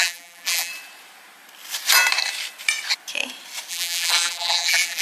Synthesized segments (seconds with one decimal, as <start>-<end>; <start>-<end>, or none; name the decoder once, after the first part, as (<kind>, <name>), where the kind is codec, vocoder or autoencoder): 0.0-0.7 (vocoder, BigVGAN v2); 3.7-5.0